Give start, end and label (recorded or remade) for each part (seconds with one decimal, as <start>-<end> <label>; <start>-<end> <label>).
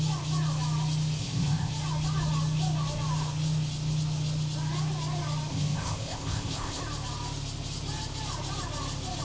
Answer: 0.0-1.2 recorded; 1.2-1.7 remade; 1.7-5.5 recorded; 5.5-6.8 remade; 6.8-9.2 recorded